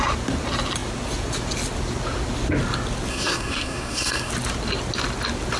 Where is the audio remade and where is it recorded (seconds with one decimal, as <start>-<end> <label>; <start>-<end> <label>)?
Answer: 0.0-3.1 recorded; 3.1-4.3 remade; 4.3-5.6 recorded